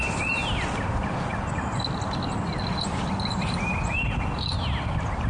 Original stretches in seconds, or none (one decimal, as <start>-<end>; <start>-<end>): 0.4-0.9; 1.3-4.5